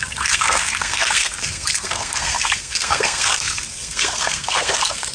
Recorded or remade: remade